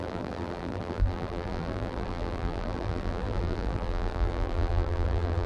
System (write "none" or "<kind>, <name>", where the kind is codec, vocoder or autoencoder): vocoder, BigVGAN v2